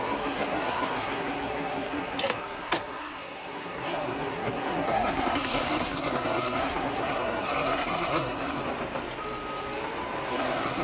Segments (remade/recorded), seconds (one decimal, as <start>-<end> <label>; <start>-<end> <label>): 0.0-8.6 remade; 8.6-10.3 recorded; 10.3-10.8 remade